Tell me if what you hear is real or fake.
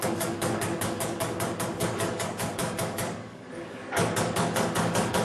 fake